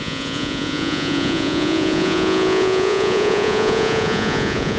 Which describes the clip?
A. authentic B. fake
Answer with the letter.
B